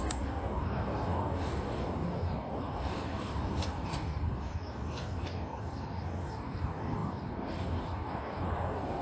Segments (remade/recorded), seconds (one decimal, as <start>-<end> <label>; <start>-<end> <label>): 0.0-9.0 remade